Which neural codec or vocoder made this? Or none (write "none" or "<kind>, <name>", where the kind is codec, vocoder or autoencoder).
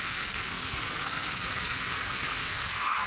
codec, SNAC